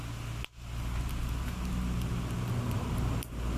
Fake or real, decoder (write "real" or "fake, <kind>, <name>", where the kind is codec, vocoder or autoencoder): real